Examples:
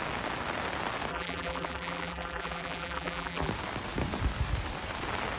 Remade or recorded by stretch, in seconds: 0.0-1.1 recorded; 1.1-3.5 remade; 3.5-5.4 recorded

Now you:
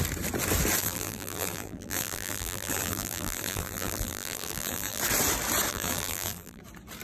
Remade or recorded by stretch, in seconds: 0.0-0.8 recorded; 0.8-5.0 remade; 5.0-5.7 recorded; 5.7-6.6 remade; 6.6-7.0 recorded

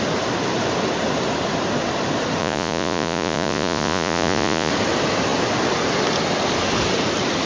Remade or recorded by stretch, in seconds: 0.0-2.4 recorded; 2.4-4.7 remade; 4.7-7.5 recorded

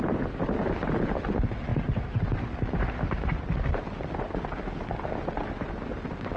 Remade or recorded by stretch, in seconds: 0.0-1.7 recorded; 1.7-5.5 remade; 5.5-6.4 recorded

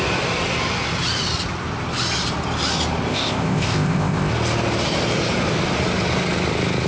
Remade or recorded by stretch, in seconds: 0.0-3.1 recorded; 3.1-4.3 remade; 4.3-6.9 recorded

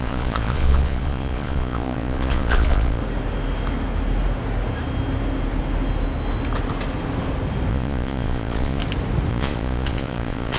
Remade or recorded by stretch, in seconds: 0.0-3.0 remade; 3.0-7.7 recorded; 7.7-8.8 remade; 8.8-9.3 recorded; 9.3-10.6 remade

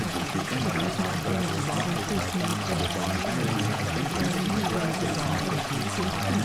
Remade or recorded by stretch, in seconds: 0.0-0.9 remade; 0.9-2.5 recorded; 2.5-6.0 remade; 6.0-6.4 recorded

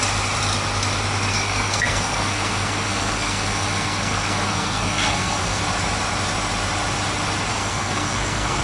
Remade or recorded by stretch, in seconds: 0.0-1.3 recorded; 1.3-5.6 remade; 5.6-7.5 recorded; 7.5-8.6 remade